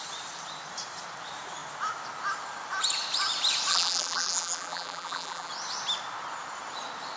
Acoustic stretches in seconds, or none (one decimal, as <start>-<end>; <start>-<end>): 0.0-3.7; 5.5-7.2